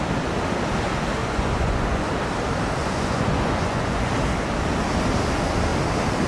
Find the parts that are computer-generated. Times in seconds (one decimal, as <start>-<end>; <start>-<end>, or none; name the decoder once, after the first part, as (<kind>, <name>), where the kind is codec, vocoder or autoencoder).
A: 1.2-2.1 (vocoder, Vocos); 2.8-4.1